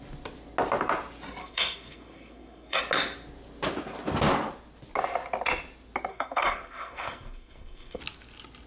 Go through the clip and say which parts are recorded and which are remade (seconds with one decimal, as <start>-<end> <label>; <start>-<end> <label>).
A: 0.0-1.4 recorded; 1.4-2.8 remade; 2.8-6.1 recorded; 6.1-8.0 remade; 8.0-8.7 recorded